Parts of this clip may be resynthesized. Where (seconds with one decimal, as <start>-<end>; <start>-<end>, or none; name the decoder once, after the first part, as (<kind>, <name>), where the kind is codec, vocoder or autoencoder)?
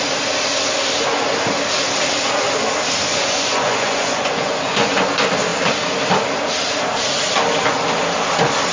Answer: 3.1-5.0 (vocoder, Vocos)